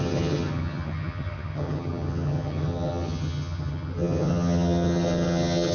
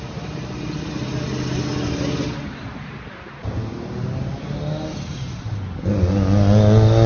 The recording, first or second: second